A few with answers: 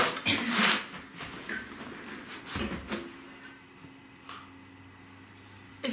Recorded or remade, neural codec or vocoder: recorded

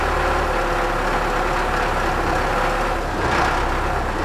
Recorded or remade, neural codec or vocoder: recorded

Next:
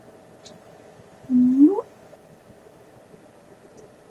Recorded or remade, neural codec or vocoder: recorded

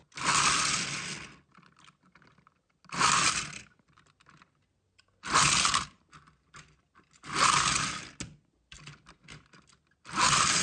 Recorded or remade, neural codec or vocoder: recorded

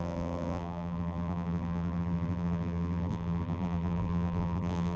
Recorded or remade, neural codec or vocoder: remade, vocoder, BigVGAN v2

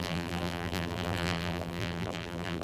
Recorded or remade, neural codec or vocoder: remade, vocoder, BigVGAN v2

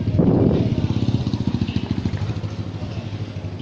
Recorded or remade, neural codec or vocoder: recorded